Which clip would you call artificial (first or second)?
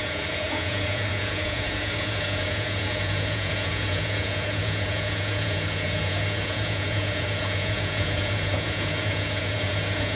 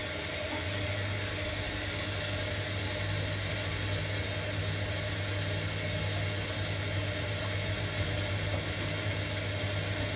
first